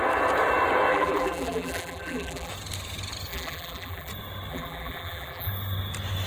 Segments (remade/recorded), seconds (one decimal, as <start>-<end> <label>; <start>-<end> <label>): 0.0-0.9 recorded; 0.9-2.5 remade; 2.5-3.3 recorded; 3.3-4.1 remade; 4.1-4.5 recorded; 4.5-5.5 remade; 5.5-6.3 recorded